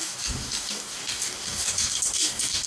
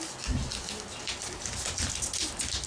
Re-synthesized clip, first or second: first